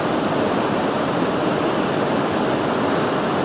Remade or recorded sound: recorded